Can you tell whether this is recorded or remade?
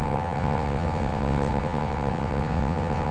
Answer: remade